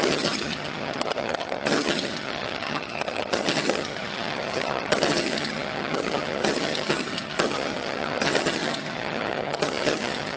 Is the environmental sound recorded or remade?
remade